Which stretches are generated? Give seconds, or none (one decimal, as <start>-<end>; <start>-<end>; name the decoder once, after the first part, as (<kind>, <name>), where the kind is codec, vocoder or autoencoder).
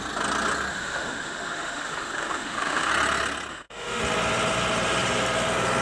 0.7-2.9 (autoencoder, DAC-VAE); 3.5-4.0